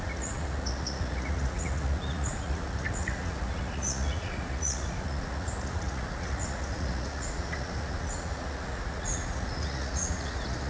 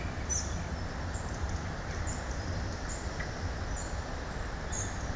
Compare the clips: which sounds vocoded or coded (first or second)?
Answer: first